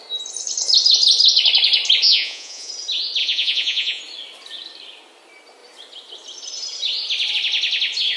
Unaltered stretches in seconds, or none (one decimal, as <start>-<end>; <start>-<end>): 0.0-2.1; 2.7-3.2; 4.0-8.2